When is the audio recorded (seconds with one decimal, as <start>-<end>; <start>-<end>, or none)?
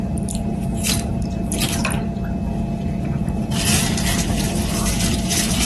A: 1.4-3.2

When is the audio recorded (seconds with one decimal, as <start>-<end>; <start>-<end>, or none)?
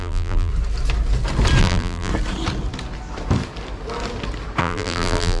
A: 0.5-1.6; 2.1-4.6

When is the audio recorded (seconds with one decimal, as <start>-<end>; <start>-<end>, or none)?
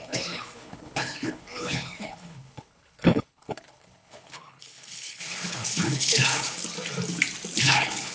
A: 6.6-7.6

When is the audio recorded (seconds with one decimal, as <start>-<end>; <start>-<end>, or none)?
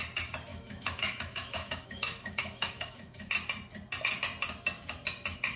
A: 0.0-0.5; 3.3-5.6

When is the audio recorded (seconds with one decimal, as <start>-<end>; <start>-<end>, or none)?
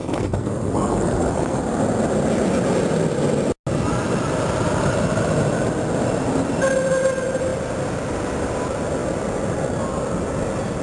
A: 1.6-10.8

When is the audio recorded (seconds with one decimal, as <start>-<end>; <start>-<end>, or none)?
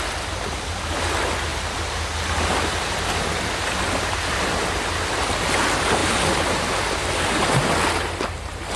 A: 0.0-8.8